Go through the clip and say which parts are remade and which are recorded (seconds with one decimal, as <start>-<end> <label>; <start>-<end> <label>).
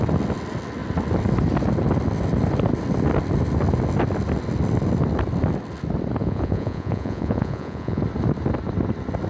0.0-6.2 recorded; 6.2-8.0 remade; 8.0-9.3 recorded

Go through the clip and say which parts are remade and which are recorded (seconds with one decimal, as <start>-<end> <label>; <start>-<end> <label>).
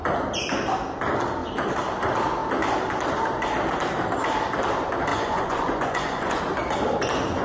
0.0-5.1 recorded; 5.1-6.4 remade; 6.4-7.4 recorded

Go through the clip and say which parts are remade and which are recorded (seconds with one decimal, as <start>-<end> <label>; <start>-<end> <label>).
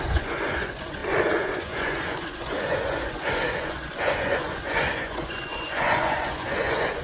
0.0-7.0 remade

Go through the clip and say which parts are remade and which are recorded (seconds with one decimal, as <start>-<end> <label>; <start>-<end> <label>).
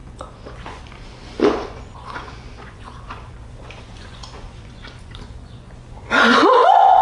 0.0-7.0 remade